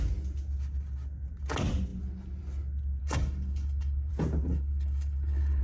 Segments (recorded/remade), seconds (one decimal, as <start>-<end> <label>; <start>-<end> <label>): 0.0-3.0 recorded; 3.0-4.1 remade; 4.1-4.5 recorded; 4.5-5.6 remade